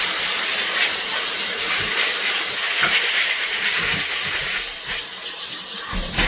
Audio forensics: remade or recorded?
remade